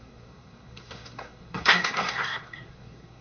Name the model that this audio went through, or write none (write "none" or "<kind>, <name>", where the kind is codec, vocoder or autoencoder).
codec, SNAC